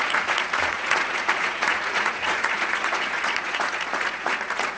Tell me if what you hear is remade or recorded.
remade